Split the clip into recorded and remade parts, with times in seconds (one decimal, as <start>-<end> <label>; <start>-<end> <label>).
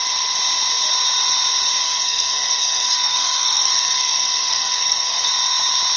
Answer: 0.0-1.8 recorded; 1.8-5.3 remade; 5.3-6.0 recorded